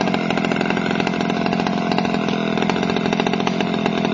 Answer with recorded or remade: recorded